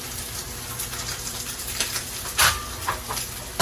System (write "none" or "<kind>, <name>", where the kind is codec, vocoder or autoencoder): none